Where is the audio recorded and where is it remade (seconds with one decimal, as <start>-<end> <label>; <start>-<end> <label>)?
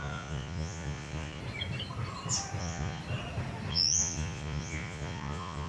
0.0-1.4 remade; 1.4-2.6 recorded; 2.6-3.0 remade; 3.0-3.7 recorded; 3.7-5.7 remade